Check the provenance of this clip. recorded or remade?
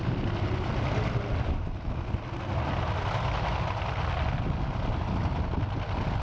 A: recorded